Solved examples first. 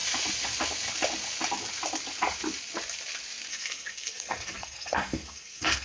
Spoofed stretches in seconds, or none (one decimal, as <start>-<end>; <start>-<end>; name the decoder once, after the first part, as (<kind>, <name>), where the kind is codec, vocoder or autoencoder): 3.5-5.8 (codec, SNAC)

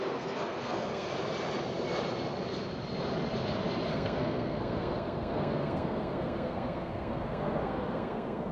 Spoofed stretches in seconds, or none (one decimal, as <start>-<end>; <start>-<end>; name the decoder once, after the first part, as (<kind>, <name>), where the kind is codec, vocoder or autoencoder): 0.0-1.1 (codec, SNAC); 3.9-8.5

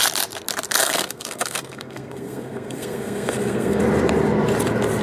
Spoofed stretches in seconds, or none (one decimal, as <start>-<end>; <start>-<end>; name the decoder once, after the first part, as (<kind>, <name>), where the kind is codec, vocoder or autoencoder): 0.8-3.8 (codec, SNAC)

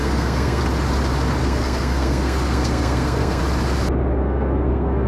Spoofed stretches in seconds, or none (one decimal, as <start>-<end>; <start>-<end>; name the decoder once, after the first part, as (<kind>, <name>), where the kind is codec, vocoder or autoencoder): 0.0-0.6 (codec, SNAC); 1.4-3.4; 4.2-5.1

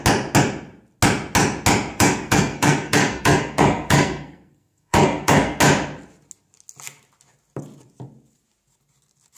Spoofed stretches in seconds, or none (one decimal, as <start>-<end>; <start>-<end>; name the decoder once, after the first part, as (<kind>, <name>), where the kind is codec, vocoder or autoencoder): 1.9-5.6 (codec, SNAC)

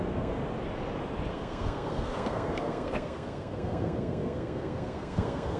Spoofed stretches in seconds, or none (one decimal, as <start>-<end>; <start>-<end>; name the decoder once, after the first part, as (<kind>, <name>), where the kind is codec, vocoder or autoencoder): 0.0-0.4 (codec, SNAC); 1.3-5.6